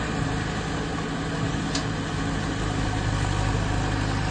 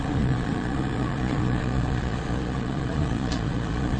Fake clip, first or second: second